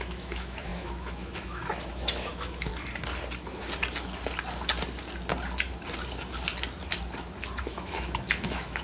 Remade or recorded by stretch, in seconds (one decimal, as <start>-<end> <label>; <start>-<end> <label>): 0.0-2.7 remade; 2.7-7.6 recorded; 7.6-8.8 remade